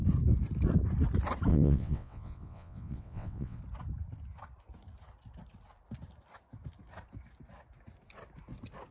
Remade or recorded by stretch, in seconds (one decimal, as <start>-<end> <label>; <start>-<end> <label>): 0.0-1.5 recorded; 1.5-3.6 remade; 3.6-8.9 recorded